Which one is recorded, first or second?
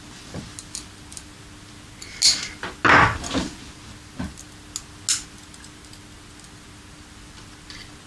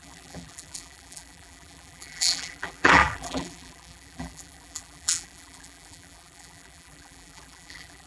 first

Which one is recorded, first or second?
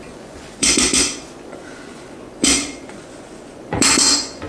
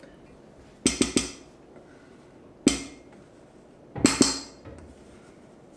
second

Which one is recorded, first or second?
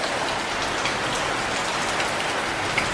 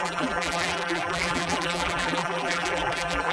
first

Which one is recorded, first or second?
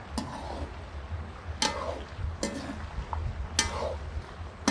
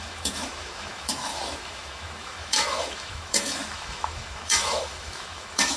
first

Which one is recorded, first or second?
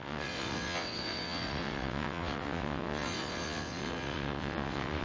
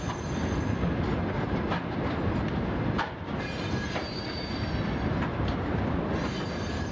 second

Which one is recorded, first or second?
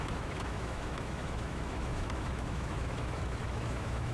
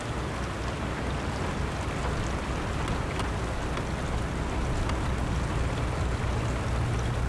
second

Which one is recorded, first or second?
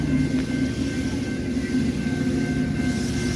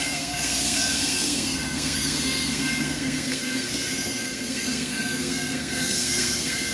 first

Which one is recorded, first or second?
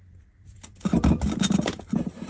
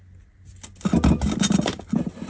second